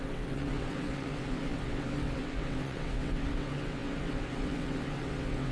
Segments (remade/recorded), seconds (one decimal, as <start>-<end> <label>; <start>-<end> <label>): 0.0-5.5 remade